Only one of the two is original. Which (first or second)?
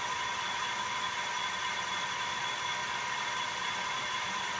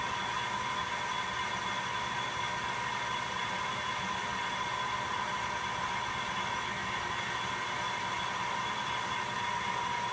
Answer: second